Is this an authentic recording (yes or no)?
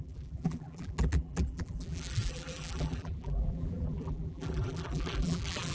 no